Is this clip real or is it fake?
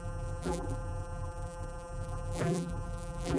fake